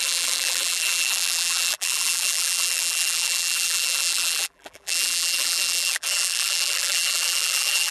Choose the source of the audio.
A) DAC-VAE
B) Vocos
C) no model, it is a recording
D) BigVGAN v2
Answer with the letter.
D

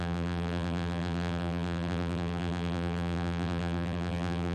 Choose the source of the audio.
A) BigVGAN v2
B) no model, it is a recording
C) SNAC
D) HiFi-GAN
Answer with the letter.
A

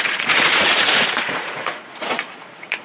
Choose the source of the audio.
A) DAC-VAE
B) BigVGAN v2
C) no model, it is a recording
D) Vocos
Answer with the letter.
D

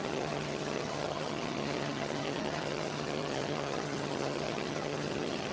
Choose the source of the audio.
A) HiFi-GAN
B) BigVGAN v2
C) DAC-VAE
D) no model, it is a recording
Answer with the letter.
A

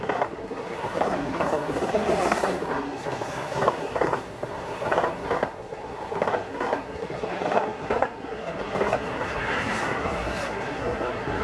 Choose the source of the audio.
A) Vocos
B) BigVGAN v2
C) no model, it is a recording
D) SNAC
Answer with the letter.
D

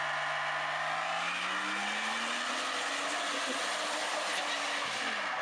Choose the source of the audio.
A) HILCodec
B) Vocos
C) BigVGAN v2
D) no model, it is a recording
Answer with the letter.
D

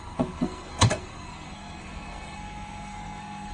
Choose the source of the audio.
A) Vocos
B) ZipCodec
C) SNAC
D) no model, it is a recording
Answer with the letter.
C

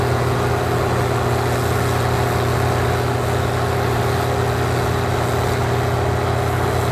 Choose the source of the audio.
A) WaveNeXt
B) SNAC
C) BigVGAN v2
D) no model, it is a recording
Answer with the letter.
D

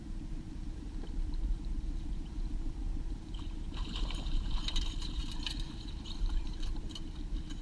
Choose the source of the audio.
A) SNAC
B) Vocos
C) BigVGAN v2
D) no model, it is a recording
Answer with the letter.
C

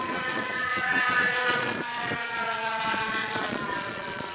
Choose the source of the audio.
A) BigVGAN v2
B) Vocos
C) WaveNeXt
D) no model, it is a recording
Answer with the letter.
B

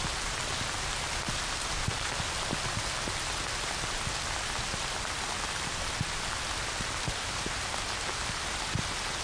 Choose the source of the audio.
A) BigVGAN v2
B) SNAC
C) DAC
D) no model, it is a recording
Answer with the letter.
D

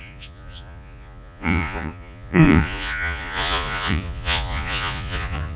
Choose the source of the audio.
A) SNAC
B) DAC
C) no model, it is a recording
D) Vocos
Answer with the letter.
D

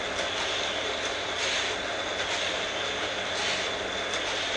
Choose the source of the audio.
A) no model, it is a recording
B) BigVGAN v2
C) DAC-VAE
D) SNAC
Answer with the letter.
A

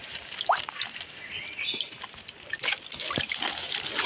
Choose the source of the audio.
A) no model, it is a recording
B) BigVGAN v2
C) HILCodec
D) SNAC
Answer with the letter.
A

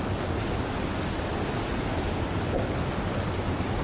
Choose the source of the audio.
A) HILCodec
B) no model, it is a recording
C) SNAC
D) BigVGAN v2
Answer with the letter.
B